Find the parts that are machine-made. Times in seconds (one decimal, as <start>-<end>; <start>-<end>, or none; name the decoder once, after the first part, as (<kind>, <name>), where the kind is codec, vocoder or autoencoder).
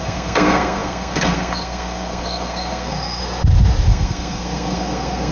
0.0-3.2 (codec, SNAC); 3.9-5.3